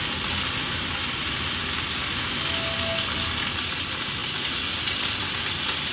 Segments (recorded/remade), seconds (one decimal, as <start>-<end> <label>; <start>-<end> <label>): 0.0-5.9 recorded